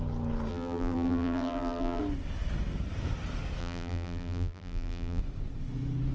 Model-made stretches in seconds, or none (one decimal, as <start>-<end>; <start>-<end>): 0.5-2.0; 3.6-5.2

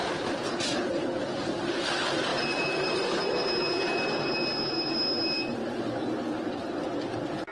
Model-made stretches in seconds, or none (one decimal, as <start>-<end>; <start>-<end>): 2.3-3.2; 5.6-6.2

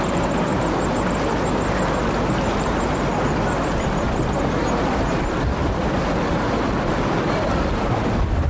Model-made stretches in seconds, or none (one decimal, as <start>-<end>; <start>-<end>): none

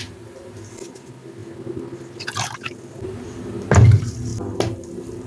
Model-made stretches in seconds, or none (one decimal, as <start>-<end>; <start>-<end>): none

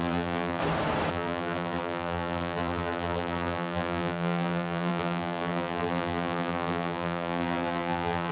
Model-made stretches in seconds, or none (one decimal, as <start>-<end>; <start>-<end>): 0.0-0.6; 1.1-8.3